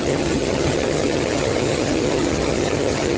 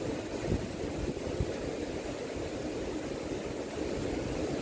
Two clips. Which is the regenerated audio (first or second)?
first